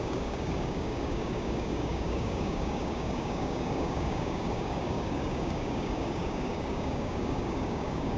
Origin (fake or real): fake